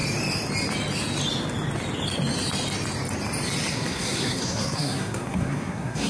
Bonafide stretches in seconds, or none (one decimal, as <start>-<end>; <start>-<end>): 0.0-3.7